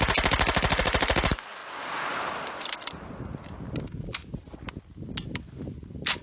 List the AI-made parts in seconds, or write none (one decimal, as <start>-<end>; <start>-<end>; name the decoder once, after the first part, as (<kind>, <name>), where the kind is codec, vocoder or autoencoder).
none